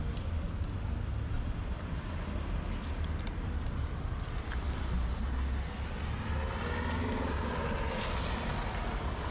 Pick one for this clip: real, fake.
real